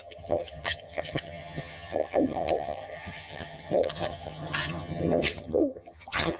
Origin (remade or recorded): remade